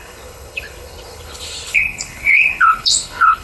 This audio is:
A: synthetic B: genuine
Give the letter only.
A